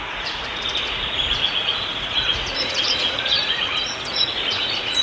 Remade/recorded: remade